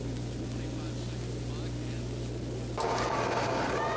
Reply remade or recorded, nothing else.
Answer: recorded